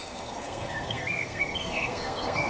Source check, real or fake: fake